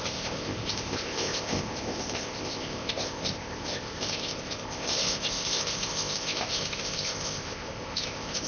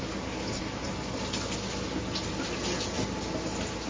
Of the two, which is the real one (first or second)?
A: second